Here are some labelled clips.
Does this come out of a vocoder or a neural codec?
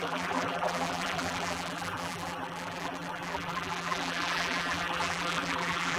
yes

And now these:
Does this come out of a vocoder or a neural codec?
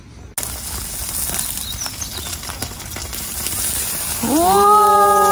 no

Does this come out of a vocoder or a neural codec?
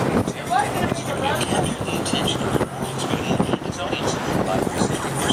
no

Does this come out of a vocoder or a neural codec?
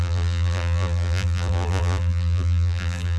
yes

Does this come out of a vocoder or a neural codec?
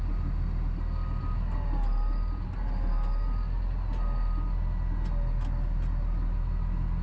no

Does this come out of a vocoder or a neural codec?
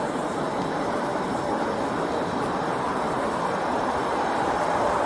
yes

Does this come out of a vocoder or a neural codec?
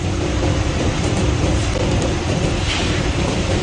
yes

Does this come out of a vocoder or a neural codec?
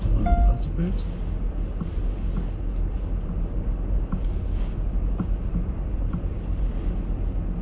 no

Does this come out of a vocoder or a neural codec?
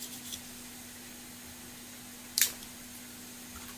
no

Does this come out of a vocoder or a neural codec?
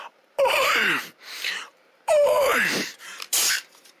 yes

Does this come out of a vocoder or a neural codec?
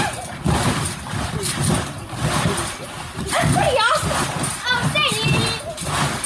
yes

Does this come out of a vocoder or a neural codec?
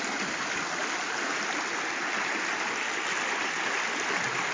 no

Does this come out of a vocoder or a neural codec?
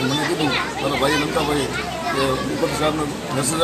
no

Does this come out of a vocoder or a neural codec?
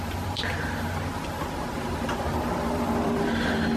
yes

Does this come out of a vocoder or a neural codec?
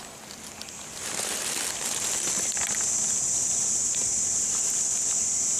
no